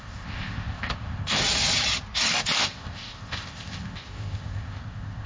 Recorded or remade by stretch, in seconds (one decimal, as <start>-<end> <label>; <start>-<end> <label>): 0.0-1.4 remade; 1.4-2.6 recorded; 2.6-5.3 remade